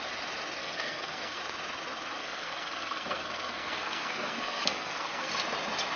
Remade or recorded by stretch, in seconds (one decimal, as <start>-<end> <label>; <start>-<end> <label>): 0.0-0.6 recorded; 0.6-1.4 remade; 1.4-2.2 recorded; 2.2-5.3 remade; 5.3-6.0 recorded